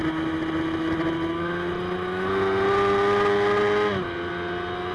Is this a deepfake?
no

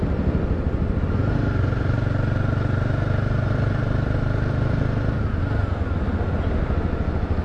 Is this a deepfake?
no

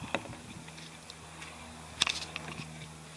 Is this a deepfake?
no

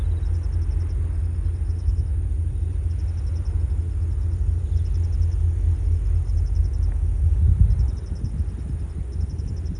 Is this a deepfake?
no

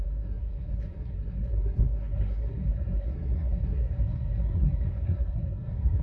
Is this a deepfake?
yes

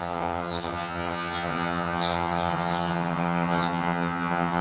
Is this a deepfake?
yes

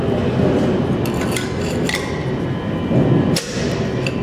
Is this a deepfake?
no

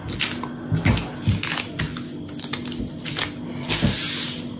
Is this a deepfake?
no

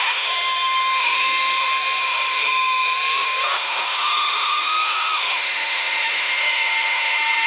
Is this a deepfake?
yes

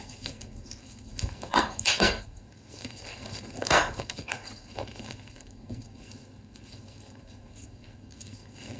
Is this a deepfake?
yes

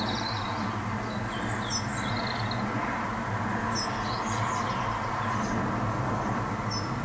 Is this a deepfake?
no